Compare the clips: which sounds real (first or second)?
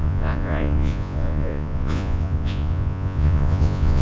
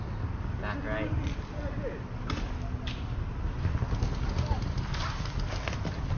second